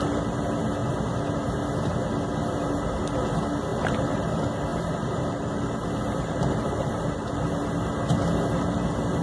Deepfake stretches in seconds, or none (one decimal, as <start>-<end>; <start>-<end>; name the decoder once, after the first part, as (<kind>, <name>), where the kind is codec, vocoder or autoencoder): 3.7-4.3 (vocoder, BigVGAN v2); 4.7-7.7